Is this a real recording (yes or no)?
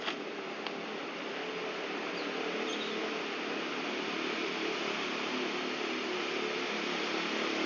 yes